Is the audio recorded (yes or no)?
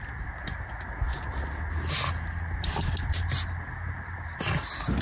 yes